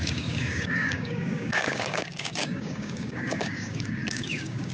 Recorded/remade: remade